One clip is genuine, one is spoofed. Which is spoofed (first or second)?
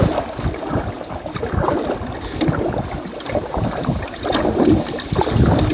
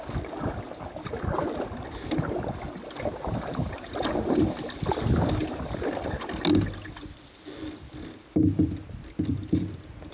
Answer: first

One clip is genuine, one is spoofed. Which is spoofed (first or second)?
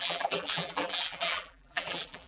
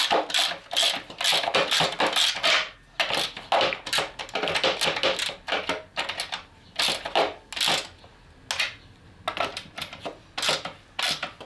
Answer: first